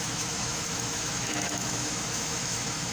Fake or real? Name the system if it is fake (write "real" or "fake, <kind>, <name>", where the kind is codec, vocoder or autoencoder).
fake, autoencoder, DAC-VAE